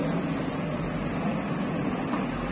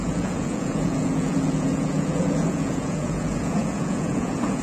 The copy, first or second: second